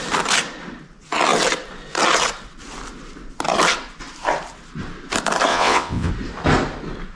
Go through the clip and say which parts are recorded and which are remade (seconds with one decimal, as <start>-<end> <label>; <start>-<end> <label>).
0.0-5.5 recorded; 5.5-6.1 remade; 6.1-7.2 recorded